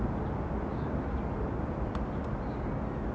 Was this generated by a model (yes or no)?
no